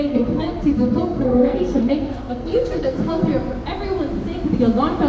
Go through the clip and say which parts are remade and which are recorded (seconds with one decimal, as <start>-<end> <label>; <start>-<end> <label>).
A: 0.0-3.3 remade; 3.3-5.1 recorded